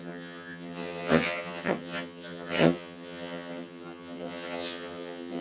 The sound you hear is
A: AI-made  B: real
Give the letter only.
A